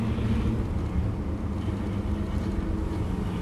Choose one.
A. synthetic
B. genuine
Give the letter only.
B